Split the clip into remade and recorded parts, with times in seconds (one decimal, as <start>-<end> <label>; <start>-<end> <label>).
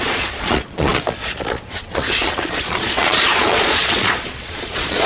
0.0-5.1 remade